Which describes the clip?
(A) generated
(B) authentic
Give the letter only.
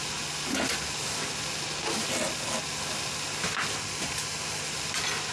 B